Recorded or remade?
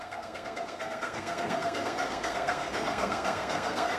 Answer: remade